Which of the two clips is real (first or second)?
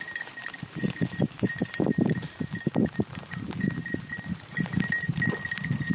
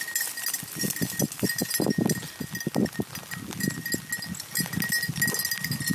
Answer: second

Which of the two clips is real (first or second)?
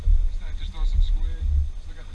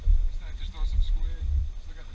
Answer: first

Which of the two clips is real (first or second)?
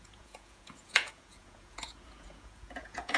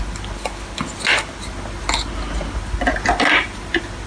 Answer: second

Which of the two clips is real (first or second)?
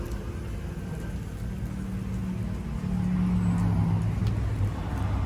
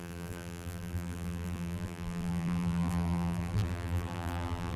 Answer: first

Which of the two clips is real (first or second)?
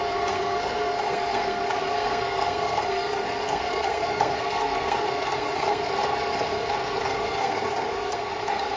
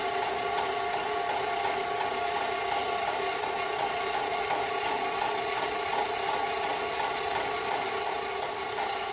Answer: second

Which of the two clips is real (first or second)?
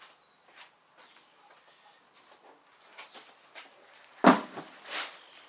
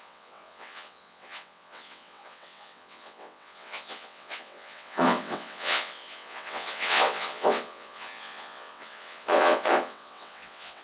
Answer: first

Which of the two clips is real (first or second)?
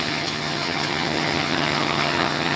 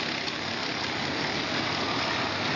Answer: second